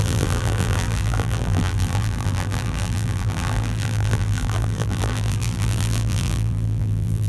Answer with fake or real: fake